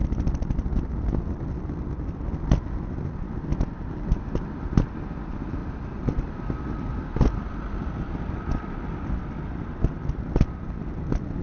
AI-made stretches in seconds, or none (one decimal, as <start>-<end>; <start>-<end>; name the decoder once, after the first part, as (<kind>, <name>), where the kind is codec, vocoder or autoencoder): 0.0-1.4 (vocoder, BigVGAN v2); 5.6-9.8